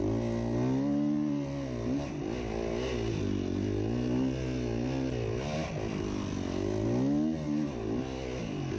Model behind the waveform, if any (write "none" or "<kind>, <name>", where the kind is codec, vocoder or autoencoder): none